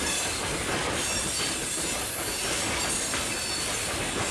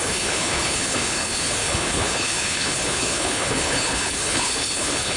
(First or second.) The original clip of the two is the first